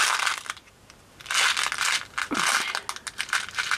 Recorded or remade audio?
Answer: recorded